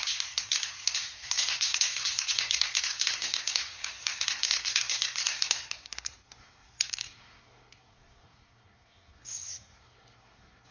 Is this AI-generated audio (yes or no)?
yes